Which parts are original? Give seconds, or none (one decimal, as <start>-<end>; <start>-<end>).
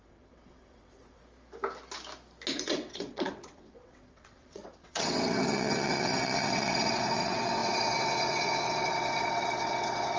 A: 1.2-2.6